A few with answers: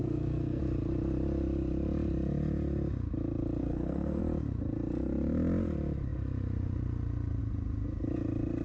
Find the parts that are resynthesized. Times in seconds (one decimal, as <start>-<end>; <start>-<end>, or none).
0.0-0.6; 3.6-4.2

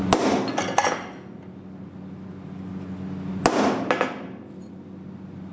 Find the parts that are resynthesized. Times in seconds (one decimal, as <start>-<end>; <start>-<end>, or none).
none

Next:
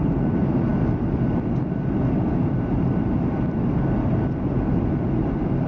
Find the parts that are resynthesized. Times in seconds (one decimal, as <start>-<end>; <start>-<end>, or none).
none